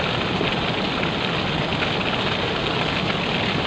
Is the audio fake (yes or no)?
no